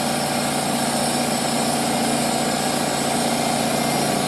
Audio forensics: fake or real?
real